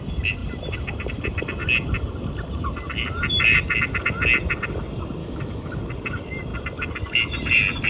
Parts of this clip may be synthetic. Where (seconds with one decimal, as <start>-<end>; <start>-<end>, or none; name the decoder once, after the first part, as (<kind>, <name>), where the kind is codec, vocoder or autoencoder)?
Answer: 5.2-5.8 (autoencoder, DAC-VAE)